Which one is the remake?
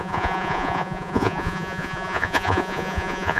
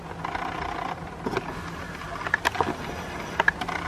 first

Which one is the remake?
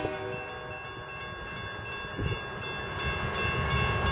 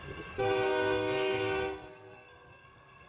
second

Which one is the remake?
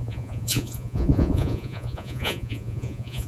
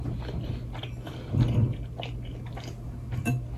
first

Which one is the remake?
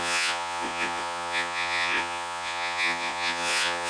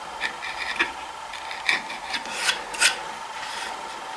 first